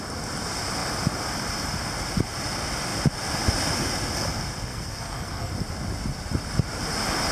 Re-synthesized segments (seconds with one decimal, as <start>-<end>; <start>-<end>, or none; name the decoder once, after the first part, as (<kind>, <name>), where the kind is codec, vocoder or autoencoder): 4.7-5.5 (codec, SNAC)